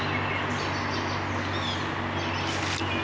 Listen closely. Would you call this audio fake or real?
real